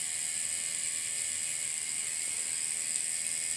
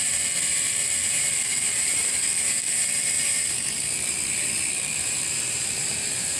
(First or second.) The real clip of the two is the first